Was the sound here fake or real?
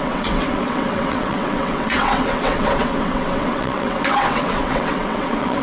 fake